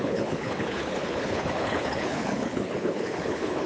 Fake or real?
fake